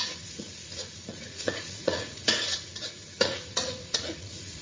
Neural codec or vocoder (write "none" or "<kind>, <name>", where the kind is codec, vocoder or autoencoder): vocoder, Vocos